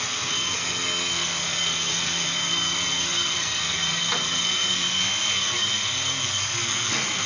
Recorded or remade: remade